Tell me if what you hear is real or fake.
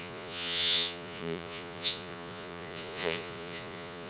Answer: fake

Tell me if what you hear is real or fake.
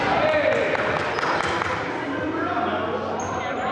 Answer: real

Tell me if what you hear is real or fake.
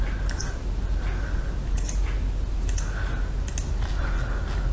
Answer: real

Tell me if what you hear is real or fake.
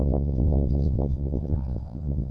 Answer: fake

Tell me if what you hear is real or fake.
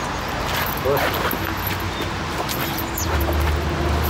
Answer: real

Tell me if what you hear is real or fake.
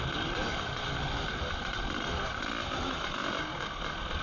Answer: real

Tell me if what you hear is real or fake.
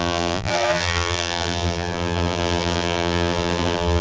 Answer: fake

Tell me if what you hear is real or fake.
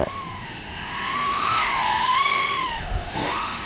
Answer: fake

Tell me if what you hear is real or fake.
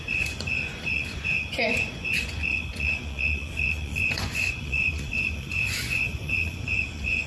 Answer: fake